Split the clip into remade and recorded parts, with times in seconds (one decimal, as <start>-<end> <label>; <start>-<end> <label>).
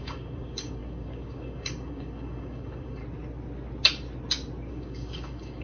0.0-3.0 remade; 3.0-4.7 recorded; 4.7-5.6 remade